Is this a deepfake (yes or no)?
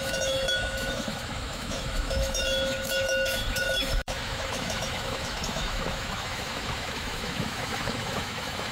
yes